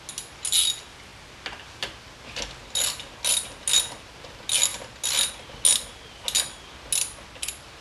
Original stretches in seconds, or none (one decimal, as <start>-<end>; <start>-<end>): 0.0-7.8